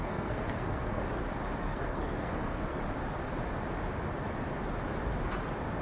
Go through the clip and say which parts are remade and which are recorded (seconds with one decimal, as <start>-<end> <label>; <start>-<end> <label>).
0.0-1.0 remade; 1.0-1.6 recorded; 1.6-2.8 remade; 2.8-5.8 recorded